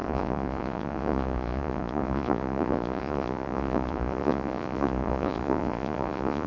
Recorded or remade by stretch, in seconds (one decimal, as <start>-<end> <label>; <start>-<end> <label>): 0.0-6.5 remade